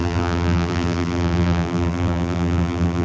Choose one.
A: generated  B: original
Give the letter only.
A